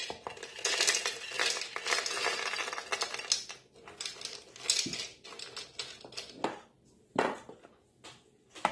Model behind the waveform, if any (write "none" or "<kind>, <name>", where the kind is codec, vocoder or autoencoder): none